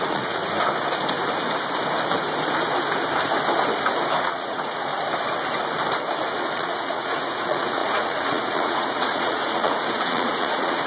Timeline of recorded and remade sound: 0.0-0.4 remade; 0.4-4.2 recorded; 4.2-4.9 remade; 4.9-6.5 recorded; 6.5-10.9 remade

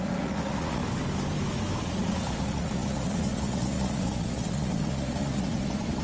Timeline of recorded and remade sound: 0.0-0.8 remade; 0.8-1.8 recorded; 1.8-6.0 remade